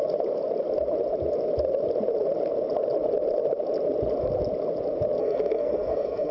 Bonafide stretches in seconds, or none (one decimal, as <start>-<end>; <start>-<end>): 0.0-5.2